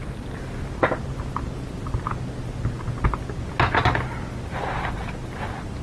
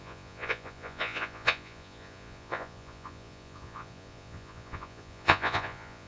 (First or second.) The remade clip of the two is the second